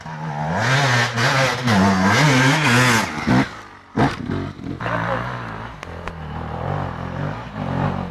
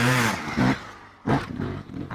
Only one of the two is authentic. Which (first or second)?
first